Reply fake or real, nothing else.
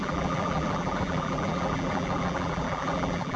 fake